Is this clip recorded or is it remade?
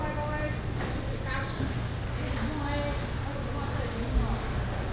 recorded